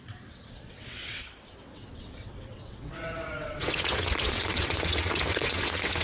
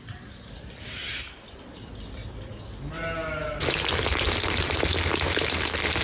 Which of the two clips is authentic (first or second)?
second